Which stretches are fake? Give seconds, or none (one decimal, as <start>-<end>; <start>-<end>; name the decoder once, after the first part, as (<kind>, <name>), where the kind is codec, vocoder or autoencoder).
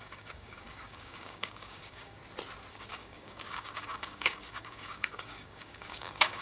0.0-2.2 (codec, DAC); 2.7-6.4